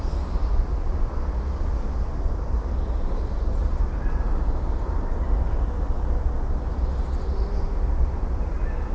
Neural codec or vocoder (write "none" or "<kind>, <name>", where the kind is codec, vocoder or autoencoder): none